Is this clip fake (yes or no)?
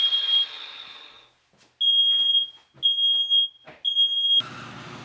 no